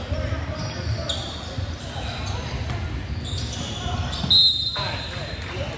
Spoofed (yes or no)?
no